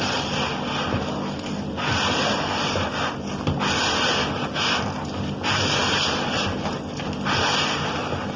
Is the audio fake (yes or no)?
no